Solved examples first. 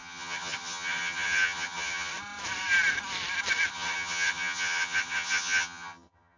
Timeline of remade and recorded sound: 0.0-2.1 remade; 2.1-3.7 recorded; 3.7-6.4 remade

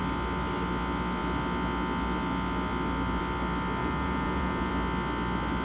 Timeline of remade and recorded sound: 0.0-3.8 recorded; 3.8-4.7 remade; 4.7-5.6 recorded

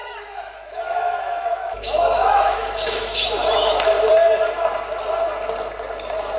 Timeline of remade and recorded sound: 0.0-3.8 remade; 3.8-6.4 recorded

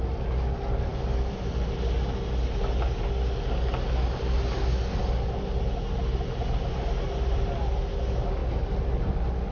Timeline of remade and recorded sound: 0.0-9.5 recorded

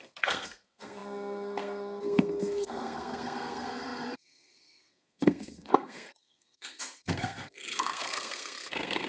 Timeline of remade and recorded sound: 0.0-9.1 remade

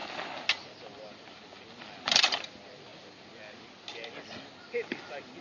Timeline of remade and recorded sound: 0.0-5.4 recorded

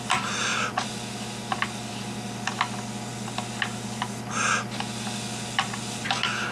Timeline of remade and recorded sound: 0.0-6.5 recorded